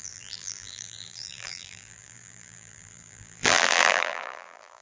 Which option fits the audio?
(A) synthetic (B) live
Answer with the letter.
A